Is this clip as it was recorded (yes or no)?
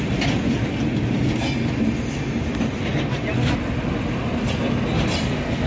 yes